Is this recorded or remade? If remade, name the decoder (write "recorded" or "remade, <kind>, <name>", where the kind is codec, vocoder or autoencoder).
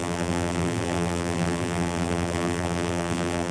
remade, vocoder, BigVGAN v2